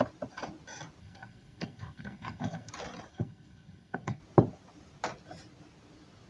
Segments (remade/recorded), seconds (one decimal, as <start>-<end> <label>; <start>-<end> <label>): 0.0-1.0 recorded; 1.0-2.7 remade; 2.7-3.1 recorded; 3.1-4.2 remade; 4.2-6.3 recorded